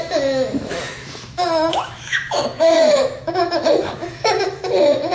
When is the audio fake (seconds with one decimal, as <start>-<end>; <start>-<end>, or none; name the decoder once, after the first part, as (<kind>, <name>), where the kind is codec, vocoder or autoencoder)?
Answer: 0.0-5.1 (autoencoder, DAC-VAE)